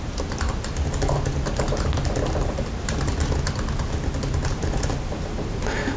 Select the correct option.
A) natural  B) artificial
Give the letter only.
A